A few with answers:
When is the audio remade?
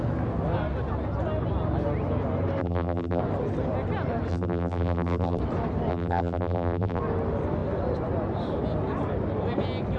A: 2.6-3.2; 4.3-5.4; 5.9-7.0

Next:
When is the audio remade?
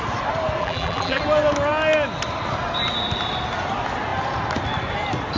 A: 0.6-1.2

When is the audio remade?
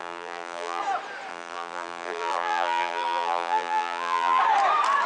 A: 0.0-0.8; 1.3-4.4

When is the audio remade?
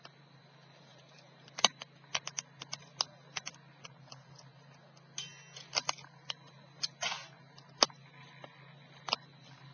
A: 0.9-1.8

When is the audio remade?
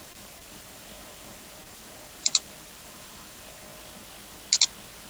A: 0.0-3.7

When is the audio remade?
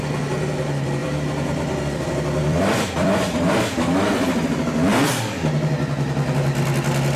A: 1.0-5.3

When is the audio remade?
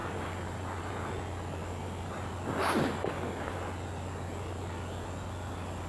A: 0.0-0.9; 1.6-3.2